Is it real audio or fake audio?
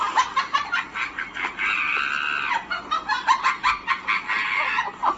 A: real